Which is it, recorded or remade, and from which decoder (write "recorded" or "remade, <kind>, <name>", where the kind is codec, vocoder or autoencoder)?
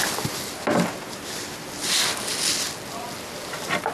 recorded